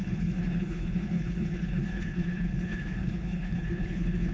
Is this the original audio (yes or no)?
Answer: no